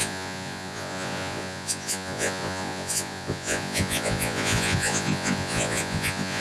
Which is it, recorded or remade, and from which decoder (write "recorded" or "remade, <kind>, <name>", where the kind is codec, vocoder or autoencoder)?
remade, vocoder, Vocos